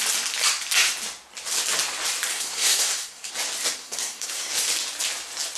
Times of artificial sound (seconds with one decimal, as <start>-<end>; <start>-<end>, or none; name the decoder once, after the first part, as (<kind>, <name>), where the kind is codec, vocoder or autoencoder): 2.3-3.3 (codec, SNAC); 3.8-4.5